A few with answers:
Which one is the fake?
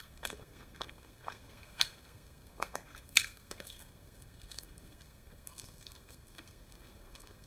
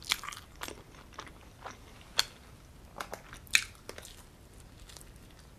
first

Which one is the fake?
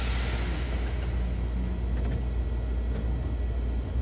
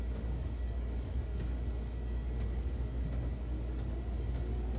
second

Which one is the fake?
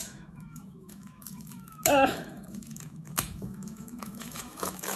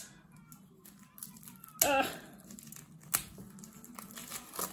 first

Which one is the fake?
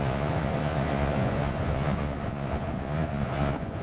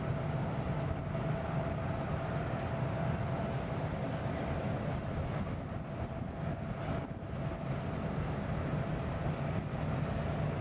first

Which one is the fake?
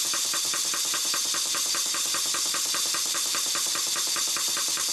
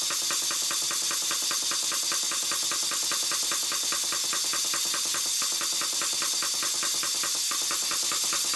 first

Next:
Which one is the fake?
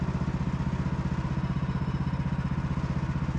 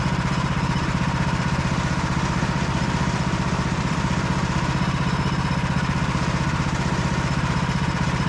second